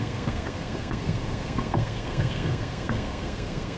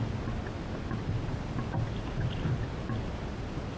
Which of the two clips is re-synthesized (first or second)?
first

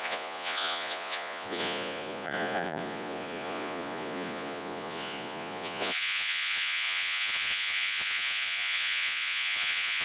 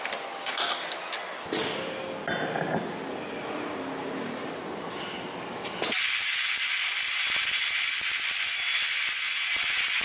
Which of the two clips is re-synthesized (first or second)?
first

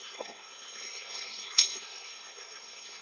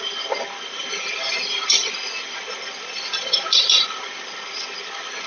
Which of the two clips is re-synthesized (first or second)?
first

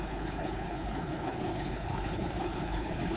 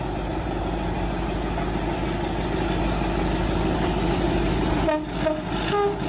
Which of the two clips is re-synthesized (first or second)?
first